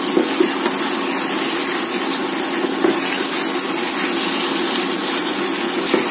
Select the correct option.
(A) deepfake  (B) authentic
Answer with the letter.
B